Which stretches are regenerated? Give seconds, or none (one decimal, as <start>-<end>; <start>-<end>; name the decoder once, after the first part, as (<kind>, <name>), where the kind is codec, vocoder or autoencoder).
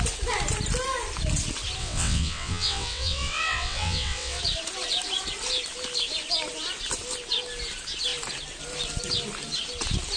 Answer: 1.8-4.4 (vocoder, WaveNeXt)